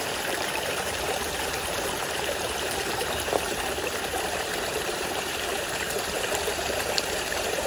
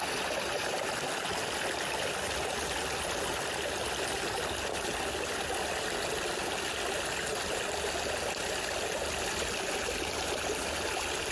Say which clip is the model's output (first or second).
first